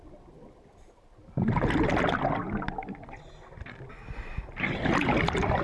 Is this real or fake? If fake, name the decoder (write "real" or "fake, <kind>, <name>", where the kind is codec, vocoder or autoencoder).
real